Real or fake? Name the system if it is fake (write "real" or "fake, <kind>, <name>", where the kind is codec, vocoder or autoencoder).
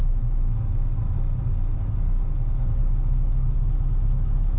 real